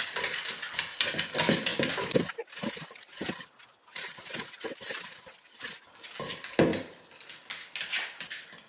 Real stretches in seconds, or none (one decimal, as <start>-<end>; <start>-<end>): 0.0-1.7; 2.3-6.7; 8.2-8.7